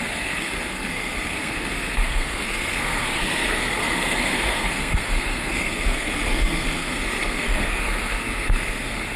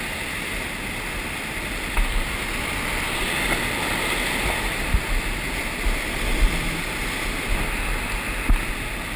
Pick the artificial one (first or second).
first